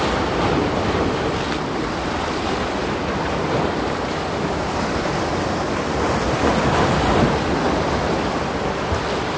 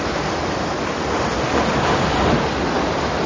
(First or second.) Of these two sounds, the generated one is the first